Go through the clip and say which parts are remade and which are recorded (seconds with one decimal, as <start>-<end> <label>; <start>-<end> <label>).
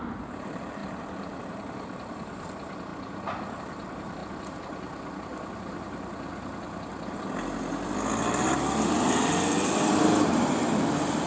0.0-2.9 remade; 2.9-3.6 recorded; 3.6-4.2 remade; 4.2-8.6 recorded; 8.6-11.3 remade